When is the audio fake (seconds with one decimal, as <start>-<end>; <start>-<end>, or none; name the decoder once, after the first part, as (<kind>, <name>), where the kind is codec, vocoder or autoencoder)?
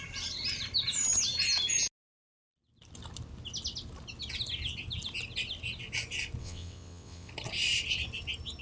6.4-7.3 (vocoder, WaveNeXt)